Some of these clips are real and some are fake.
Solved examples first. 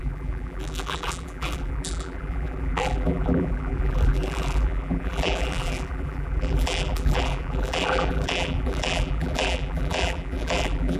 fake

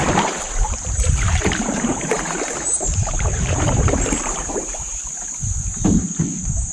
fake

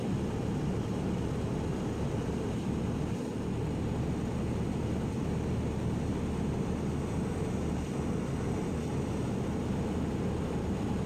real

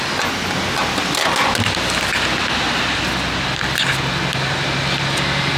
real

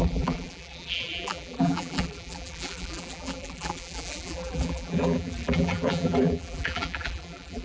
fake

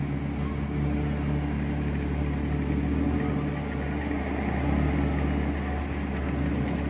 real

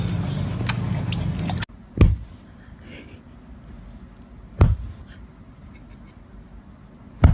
real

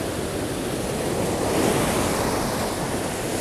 real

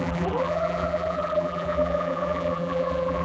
fake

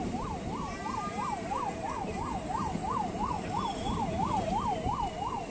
fake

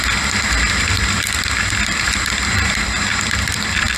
fake